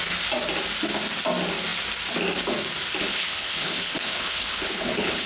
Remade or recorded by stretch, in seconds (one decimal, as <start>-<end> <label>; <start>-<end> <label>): 0.0-3.0 recorded; 3.0-5.3 remade